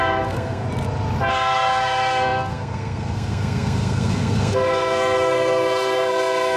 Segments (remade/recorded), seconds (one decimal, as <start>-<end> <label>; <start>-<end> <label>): 0.0-0.6 remade; 0.6-1.3 recorded; 1.3-6.6 remade